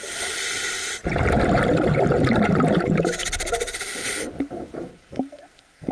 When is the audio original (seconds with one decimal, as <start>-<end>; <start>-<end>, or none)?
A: 0.0-4.9